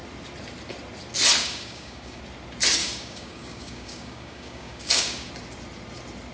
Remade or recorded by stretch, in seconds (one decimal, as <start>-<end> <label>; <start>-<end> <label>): 0.0-1.4 recorded; 1.4-2.2 remade; 2.2-2.8 recorded; 2.8-5.3 remade; 5.3-6.3 recorded